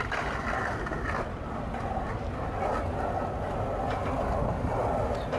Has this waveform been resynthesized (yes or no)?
no